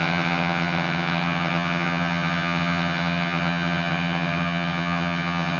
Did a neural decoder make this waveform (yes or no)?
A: yes